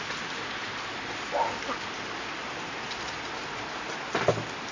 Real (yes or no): yes